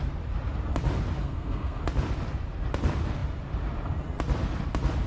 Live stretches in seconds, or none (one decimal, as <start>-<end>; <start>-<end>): 0.0-1.2; 1.8-5.1